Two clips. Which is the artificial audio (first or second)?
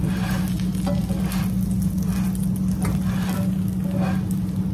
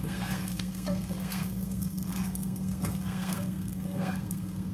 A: second